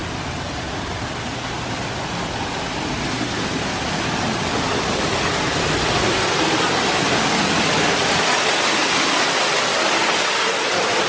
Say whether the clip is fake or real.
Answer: real